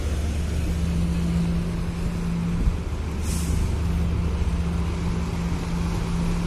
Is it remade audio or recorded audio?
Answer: recorded